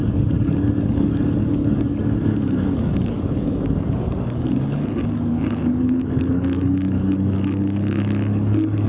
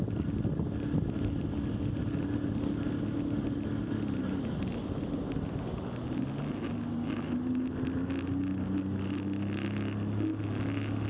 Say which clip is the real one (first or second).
second